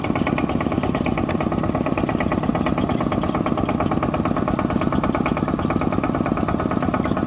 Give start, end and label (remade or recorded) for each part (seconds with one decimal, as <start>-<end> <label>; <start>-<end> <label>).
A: 0.0-7.3 recorded